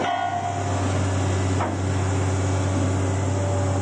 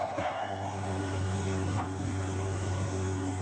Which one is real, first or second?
first